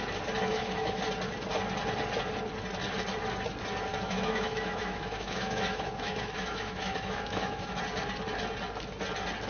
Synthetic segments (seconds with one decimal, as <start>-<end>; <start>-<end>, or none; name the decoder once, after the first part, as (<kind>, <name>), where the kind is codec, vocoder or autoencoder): 0.5-1.0 (autoencoder, DAC-VAE); 3.9-7.8